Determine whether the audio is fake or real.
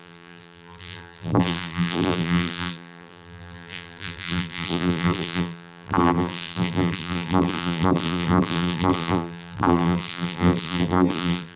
fake